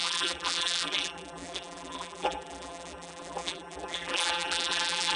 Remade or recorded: remade